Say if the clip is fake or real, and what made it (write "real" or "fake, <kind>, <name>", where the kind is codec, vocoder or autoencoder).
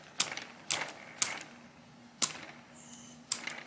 real